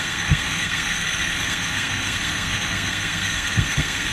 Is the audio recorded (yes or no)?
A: no